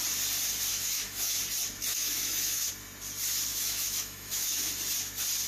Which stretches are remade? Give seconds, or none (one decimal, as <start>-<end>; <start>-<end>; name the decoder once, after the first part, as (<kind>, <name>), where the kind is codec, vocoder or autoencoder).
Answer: 0.7-1.4 (autoencoder, DAC-VAE); 1.9-2.7; 3.5-4.7